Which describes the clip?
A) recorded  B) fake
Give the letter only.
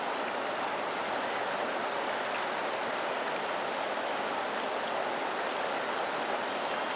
A